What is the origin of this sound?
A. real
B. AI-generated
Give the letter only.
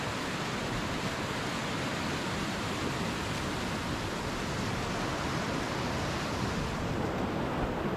A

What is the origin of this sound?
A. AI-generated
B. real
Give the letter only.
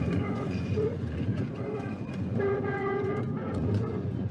A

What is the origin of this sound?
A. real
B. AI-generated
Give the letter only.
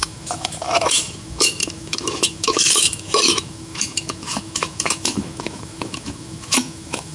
B